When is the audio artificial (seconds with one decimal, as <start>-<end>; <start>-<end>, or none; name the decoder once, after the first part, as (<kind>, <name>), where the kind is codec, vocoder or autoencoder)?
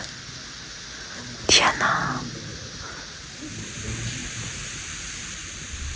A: 2.5-3.2 (vocoder, Vocos); 4.2-4.8